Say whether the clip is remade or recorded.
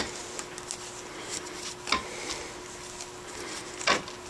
recorded